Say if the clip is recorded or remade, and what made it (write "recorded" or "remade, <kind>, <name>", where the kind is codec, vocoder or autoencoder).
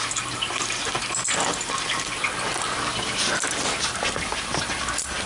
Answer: recorded